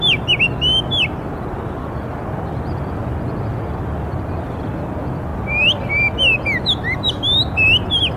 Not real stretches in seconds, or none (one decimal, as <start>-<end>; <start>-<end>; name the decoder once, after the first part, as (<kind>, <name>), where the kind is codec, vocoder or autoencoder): none